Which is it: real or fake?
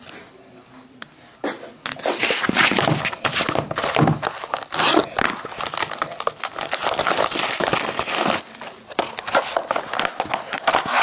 real